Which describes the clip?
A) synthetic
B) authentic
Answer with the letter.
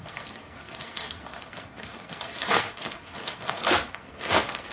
A